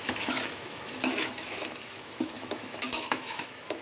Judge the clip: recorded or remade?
remade